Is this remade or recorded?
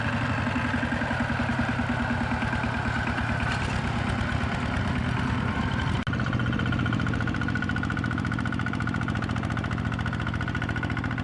recorded